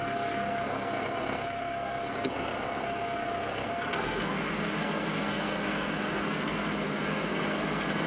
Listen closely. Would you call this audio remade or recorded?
remade